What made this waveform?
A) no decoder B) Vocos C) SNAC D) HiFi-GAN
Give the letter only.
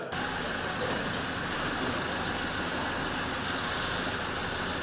A